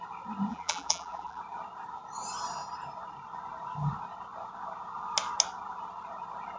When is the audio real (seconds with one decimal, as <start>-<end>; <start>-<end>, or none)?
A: 0.0-0.5; 1.4-6.6